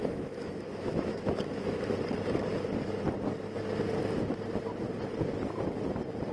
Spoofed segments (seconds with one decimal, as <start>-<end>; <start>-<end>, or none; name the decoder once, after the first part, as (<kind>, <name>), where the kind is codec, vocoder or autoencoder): 0.0-1.8 (autoencoder, DAC-VAE)